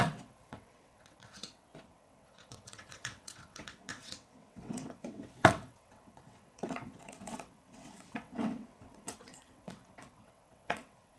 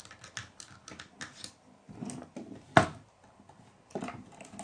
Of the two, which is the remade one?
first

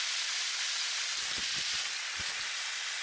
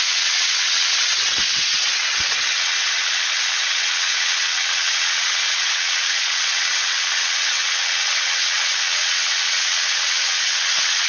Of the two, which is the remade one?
second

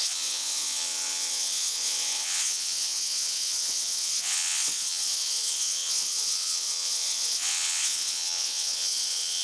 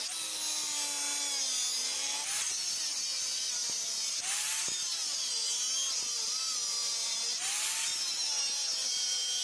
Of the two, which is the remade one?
first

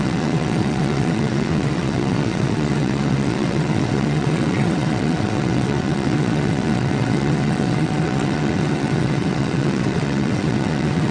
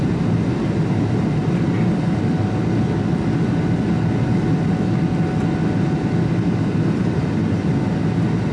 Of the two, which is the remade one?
first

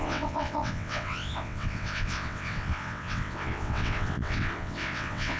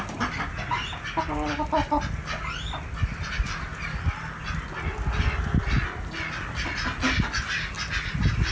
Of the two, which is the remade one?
first